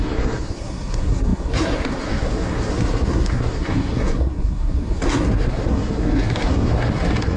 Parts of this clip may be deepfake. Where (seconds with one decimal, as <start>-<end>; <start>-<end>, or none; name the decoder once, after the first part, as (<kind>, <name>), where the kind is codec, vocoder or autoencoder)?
0.0-7.4 (codec, SNAC)